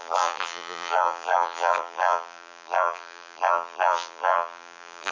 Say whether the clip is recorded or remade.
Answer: remade